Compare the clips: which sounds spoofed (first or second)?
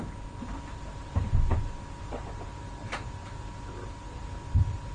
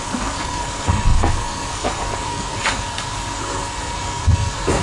second